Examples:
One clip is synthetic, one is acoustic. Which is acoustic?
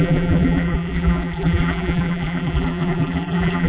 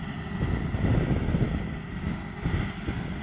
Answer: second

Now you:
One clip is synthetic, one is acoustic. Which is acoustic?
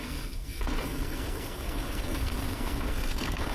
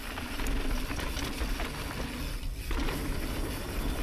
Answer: second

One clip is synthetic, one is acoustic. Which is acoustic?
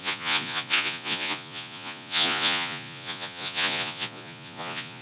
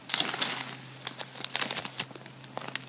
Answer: second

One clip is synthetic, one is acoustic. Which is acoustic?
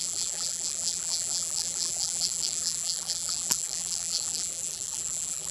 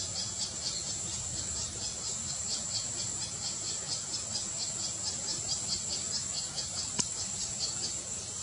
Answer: second